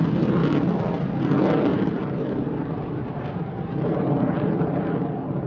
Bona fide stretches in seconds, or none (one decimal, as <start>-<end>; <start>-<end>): 0.0-1.7; 5.0-5.5